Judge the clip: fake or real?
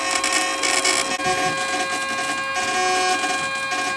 real